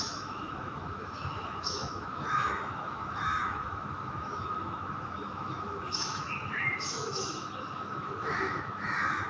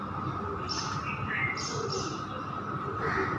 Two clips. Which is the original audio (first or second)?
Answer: second